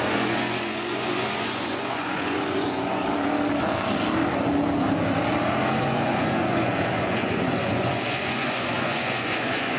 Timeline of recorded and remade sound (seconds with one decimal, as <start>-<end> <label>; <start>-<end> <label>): 0.0-3.0 remade; 3.0-5.8 recorded; 5.8-9.8 remade